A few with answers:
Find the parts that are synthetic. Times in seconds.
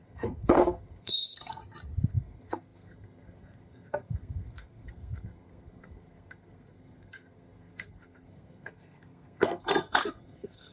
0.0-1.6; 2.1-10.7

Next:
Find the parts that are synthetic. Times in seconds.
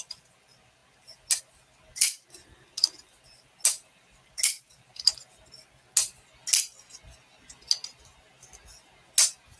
none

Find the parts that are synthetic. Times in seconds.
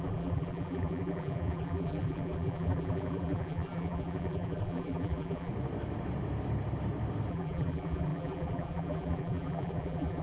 0.0-5.5; 7.3-10.2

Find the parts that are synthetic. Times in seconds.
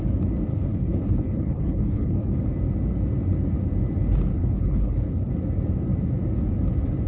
0.5-2.4; 4.3-5.3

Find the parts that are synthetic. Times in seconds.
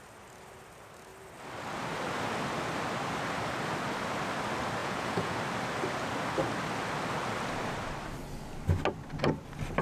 4.8-5.4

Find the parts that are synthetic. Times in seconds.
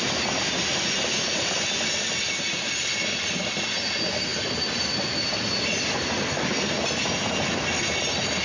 none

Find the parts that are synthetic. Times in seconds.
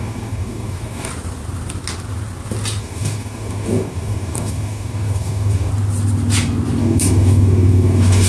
0.0-1.1; 2.8-5.7; 6.8-8.3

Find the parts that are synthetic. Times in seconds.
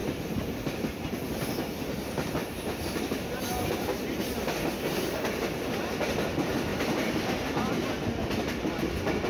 2.4-3.0; 6.7-7.7